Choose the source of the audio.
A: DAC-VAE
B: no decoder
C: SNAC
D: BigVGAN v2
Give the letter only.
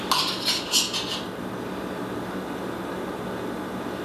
B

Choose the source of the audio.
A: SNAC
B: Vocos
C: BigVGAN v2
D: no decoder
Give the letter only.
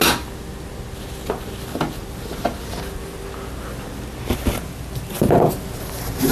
D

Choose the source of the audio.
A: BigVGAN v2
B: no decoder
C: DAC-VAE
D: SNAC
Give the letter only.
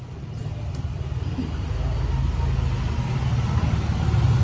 B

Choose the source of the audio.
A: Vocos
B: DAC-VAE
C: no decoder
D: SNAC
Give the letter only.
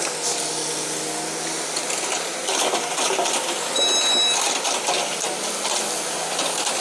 C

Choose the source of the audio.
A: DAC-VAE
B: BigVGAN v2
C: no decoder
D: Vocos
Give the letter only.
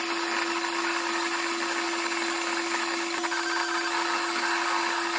C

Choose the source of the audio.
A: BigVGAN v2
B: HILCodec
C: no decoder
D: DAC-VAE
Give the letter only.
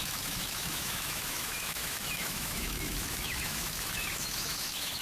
D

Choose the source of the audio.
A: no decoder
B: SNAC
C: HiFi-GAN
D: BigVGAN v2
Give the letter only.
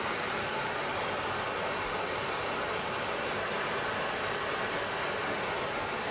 A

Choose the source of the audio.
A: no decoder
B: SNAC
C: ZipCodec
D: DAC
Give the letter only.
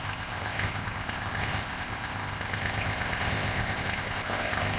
C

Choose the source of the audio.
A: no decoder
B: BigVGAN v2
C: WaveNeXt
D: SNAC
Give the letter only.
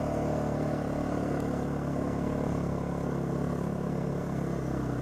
D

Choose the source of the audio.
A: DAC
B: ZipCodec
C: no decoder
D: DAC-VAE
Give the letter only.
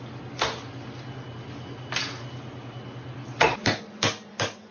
C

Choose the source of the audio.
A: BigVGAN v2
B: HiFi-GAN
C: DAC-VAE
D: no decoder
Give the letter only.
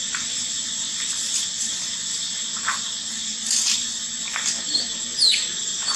D